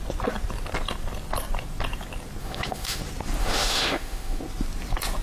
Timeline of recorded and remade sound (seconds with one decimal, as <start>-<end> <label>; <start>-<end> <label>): 0.0-2.4 recorded; 2.4-3.0 remade; 3.0-3.4 recorded; 3.4-4.4 remade; 4.4-5.2 recorded